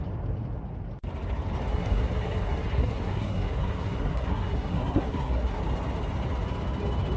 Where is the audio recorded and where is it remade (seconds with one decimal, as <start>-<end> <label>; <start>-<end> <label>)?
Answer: 0.0-1.7 recorded; 1.7-5.6 remade; 5.6-7.2 recorded